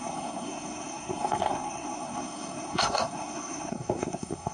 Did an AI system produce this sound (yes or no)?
yes